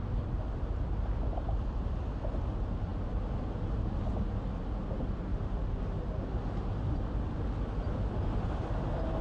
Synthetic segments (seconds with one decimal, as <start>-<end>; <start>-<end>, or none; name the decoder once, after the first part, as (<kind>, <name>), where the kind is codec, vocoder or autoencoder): 5.3-5.8 (vocoder, BigVGAN v2)